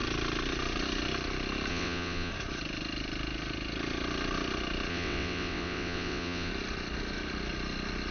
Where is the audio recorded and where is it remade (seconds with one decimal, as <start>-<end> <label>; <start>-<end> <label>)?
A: 0.0-1.7 recorded; 1.7-2.3 remade; 2.3-4.9 recorded; 4.9-6.5 remade; 6.5-8.1 recorded